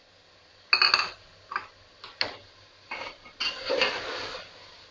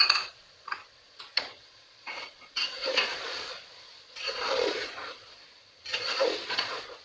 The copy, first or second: second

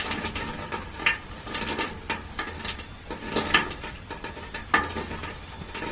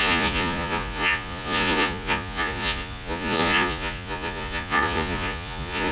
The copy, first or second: second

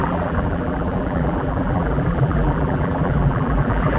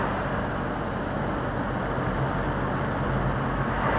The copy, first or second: first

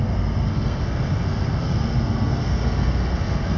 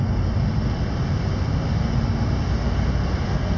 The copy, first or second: first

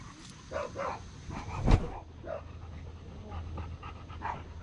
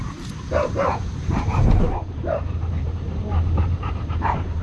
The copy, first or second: second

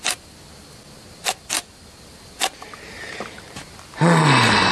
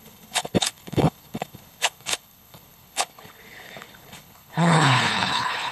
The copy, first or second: second